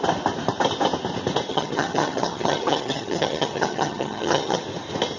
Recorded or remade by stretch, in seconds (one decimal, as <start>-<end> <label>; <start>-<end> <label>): 0.0-1.5 recorded; 1.5-4.6 remade; 4.6-5.2 recorded